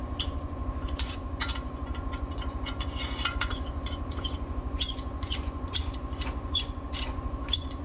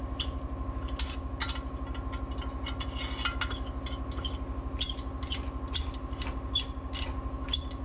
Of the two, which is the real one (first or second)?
second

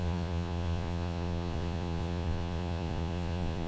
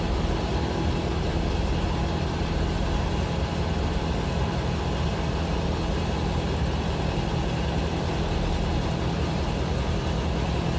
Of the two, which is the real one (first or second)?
second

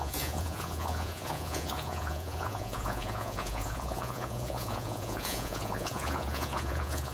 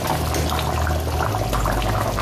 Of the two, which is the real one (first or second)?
second